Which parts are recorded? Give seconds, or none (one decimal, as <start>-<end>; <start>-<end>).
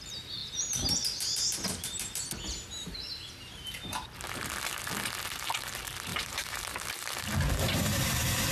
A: 0.0-6.1; 6.6-8.5